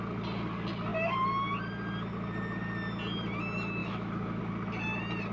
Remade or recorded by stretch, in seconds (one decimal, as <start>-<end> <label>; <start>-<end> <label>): 0.0-3.8 recorded; 3.8-4.4 remade; 4.4-5.3 recorded